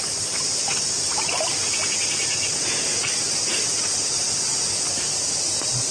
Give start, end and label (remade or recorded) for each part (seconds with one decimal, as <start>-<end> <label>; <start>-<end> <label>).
0.0-5.9 recorded